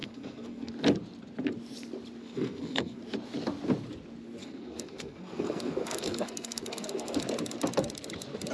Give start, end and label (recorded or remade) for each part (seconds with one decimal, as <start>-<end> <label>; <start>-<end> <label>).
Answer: 0.0-0.7 remade; 0.7-2.2 recorded; 2.2-3.0 remade; 3.0-4.4 recorded; 4.4-7.2 remade; 7.2-8.5 recorded